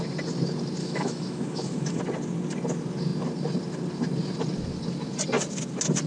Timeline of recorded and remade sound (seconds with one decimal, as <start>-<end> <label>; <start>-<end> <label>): 0.0-0.8 recorded; 0.8-2.0 remade; 2.0-6.1 recorded